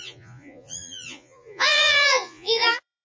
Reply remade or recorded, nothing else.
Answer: remade